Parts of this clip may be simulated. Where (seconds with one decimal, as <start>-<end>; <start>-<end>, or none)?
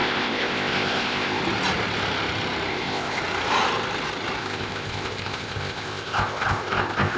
0.0-1.4; 2.7-3.2; 4.4-7.2